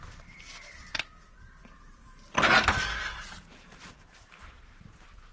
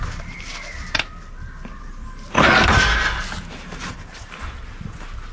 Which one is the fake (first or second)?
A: first